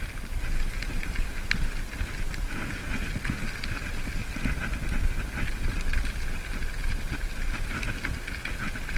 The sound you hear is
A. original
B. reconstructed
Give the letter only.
A